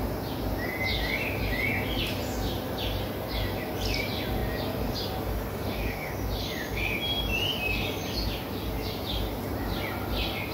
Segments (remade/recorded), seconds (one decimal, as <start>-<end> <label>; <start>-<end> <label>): 0.0-5.5 recorded; 5.5-6.1 remade; 6.1-10.5 recorded